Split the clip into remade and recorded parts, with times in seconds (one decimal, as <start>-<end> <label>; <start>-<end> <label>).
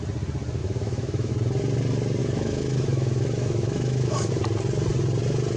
0.0-0.6 recorded; 0.6-1.3 remade; 1.3-2.2 recorded; 2.2-4.3 remade; 4.3-5.6 recorded